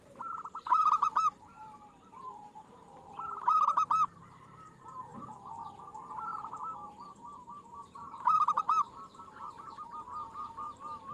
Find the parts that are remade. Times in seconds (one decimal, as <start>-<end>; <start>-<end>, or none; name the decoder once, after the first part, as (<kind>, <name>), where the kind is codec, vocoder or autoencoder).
0.0-11.1 (vocoder, BigVGAN v2)